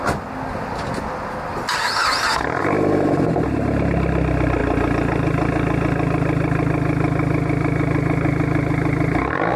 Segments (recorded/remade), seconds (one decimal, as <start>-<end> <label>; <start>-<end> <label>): 0.0-9.6 recorded